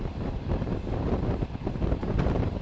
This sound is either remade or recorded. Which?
remade